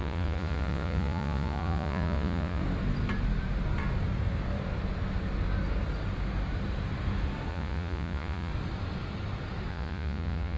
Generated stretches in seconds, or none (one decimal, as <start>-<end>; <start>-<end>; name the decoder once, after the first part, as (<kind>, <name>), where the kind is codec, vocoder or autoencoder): 0.0-2.6 (vocoder, Vocos); 7.5-8.5; 9.7-10.6

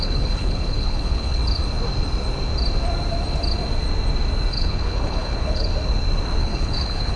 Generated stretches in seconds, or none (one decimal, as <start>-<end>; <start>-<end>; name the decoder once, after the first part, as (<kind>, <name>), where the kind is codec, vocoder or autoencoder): 0.0-1.4 (codec, HILCodec); 4.5-5.7; 6.4-7.2

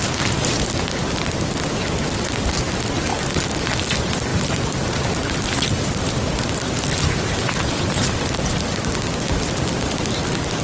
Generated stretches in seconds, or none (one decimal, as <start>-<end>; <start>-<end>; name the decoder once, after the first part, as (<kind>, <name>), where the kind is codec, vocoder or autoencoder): none

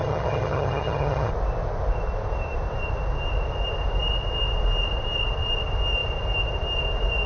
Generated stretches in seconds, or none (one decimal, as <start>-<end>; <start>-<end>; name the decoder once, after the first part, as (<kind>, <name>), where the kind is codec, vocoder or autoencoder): 0.0-1.3 (vocoder, HiFi-GAN)

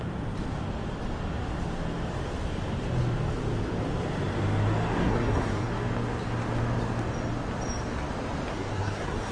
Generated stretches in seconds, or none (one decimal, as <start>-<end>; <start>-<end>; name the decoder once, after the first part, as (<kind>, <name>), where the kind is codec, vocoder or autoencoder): 5.0-5.7 (codec, SNAC); 8.5-9.3

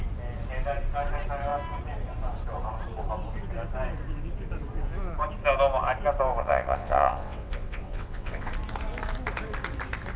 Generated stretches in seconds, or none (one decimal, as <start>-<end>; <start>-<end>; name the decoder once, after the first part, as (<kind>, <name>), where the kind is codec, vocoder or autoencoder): 6.4-8.5 (vocoder, WaveNeXt)

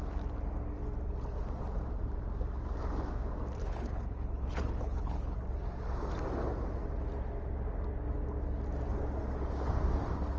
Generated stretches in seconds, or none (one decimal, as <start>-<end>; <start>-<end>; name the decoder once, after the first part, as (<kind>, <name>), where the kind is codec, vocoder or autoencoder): 3.6-5.4 (codec, HILCodec)

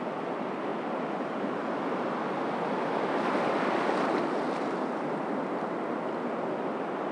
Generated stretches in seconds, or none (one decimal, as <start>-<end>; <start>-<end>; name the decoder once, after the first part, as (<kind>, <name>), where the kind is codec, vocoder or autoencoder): none